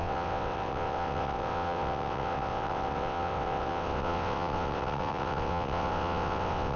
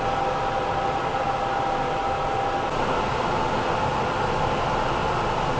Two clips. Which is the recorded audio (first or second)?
second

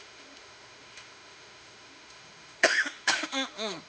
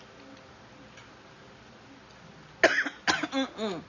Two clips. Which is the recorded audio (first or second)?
second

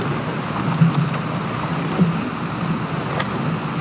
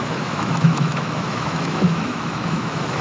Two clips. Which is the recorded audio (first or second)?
first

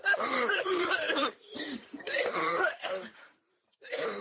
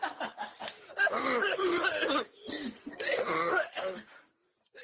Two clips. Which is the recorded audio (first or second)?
second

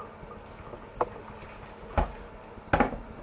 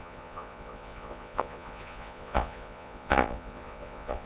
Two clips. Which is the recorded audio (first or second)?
first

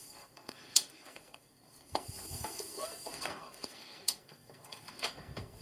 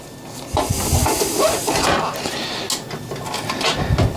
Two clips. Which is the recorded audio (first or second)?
second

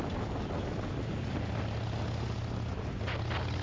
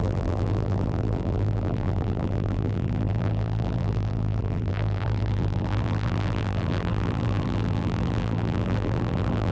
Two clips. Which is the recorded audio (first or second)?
first